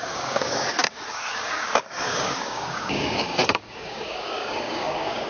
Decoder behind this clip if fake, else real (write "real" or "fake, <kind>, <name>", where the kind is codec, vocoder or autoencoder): fake, codec, DAC